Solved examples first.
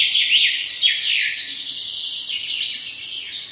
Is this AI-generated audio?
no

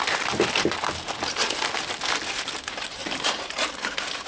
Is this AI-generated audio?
no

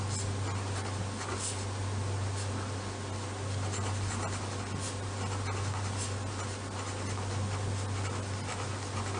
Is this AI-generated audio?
no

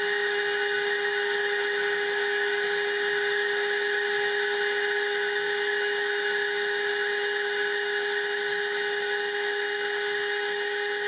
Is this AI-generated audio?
yes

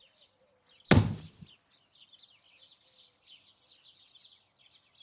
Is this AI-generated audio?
no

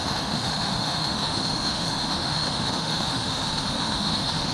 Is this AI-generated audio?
yes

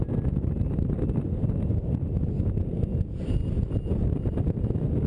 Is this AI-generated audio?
no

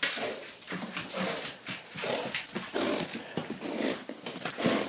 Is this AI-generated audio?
no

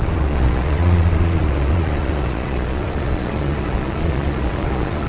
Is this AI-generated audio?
yes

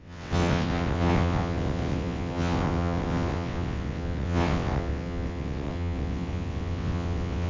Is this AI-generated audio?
yes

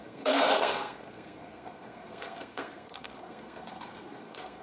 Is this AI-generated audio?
yes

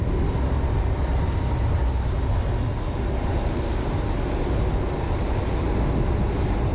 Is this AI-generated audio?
no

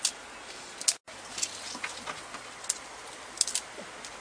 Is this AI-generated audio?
no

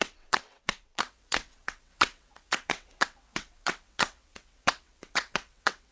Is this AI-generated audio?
yes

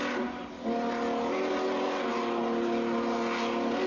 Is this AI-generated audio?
no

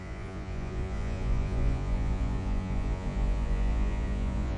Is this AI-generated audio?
yes